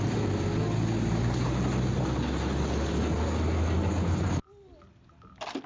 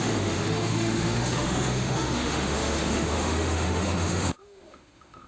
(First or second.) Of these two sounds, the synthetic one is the second